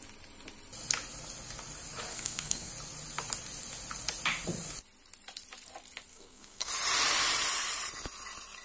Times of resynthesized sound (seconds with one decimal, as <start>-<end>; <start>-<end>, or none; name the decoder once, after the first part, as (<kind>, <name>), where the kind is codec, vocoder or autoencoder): 2.1-2.7 (codec, SNAC); 6.1-6.7